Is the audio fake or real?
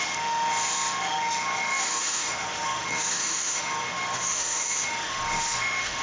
fake